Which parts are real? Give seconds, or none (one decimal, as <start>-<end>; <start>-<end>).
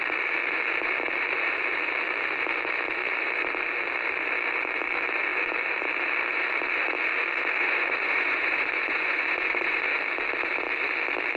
0.0-7.6; 10.0-11.4